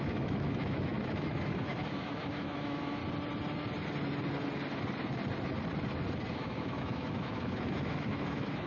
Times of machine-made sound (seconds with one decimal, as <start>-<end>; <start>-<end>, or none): 0.0-3.0; 6.3-8.7